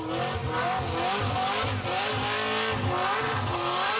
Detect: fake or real real